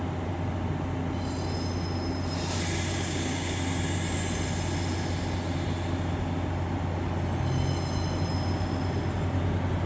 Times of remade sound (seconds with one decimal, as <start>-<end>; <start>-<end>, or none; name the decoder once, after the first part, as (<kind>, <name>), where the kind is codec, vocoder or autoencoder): 2.9-3.5 (codec, DAC)